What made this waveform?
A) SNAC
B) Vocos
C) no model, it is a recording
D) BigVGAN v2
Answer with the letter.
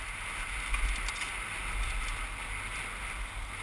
C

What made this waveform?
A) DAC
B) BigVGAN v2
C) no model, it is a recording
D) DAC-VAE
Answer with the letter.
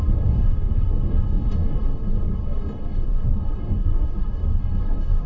A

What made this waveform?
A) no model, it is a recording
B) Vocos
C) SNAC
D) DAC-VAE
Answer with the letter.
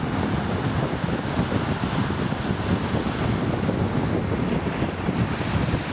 A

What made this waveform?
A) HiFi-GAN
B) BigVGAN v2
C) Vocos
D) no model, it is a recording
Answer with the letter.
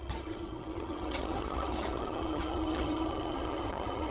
A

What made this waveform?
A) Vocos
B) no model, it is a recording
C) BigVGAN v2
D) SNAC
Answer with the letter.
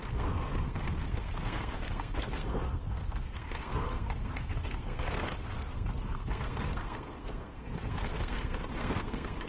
D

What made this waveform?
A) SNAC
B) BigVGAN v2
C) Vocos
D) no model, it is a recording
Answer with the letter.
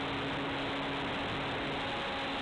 D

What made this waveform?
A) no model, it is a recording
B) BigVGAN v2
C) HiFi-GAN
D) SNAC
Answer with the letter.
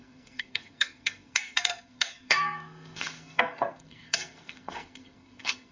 D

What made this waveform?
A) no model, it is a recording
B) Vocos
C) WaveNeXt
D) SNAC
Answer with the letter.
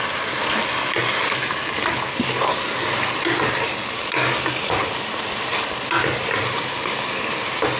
A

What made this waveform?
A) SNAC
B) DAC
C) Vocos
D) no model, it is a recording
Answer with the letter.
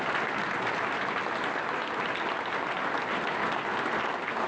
D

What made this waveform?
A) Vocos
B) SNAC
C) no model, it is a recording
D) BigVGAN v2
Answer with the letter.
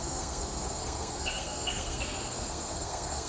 B